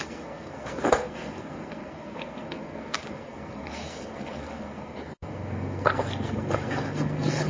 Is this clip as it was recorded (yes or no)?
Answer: no